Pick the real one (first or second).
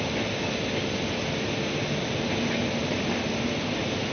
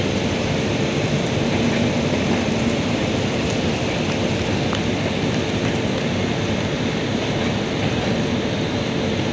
first